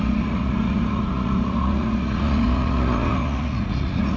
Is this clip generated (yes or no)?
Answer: yes